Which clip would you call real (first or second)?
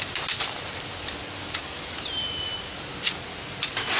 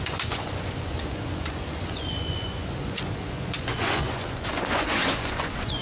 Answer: first